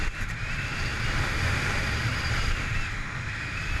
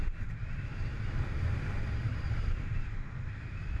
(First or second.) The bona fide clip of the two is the first